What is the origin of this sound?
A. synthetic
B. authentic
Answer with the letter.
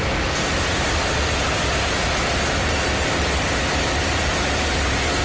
B